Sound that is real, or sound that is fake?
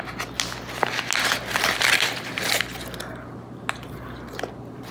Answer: real